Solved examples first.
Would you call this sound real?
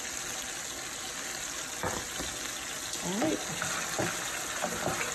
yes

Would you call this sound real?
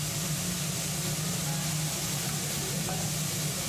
yes